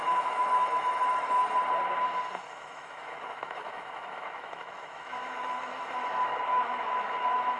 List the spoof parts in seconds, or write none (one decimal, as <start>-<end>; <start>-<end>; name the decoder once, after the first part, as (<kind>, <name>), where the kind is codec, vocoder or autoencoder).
0.0-1.4 (autoencoder, DAC-VAE); 2.5-7.6